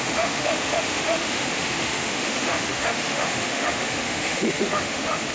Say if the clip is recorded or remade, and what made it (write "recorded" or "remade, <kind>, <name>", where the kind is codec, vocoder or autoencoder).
remade, autoencoder, DAC-VAE